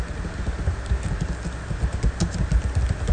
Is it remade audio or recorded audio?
recorded